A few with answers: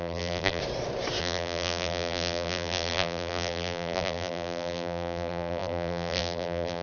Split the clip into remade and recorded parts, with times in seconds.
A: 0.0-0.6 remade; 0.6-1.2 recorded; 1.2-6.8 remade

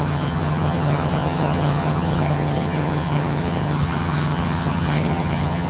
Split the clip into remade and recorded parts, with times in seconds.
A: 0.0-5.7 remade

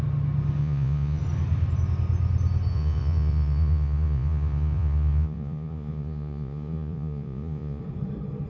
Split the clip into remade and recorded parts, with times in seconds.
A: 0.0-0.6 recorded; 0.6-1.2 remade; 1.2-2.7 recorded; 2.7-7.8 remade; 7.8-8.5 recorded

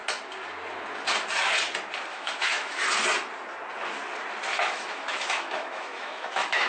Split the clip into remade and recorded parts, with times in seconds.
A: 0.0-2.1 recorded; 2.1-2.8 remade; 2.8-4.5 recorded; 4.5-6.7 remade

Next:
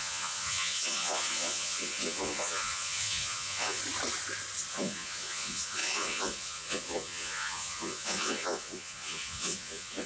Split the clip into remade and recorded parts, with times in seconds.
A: 0.0-3.8 remade; 3.8-4.7 recorded; 4.7-10.1 remade

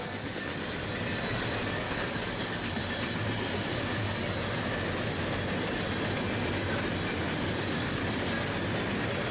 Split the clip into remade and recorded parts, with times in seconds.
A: 0.0-0.5 remade; 0.5-1.7 recorded; 1.7-2.8 remade; 2.8-7.4 recorded; 7.4-8.0 remade; 8.0-9.3 recorded

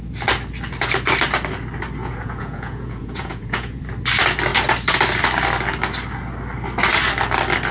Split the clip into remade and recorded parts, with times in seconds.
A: 0.0-2.0 recorded; 2.0-3.8 remade; 3.8-7.7 recorded

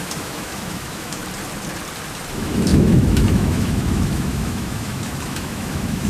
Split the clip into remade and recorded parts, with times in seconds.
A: 0.0-1.2 remade; 1.2-2.3 recorded; 2.3-6.1 remade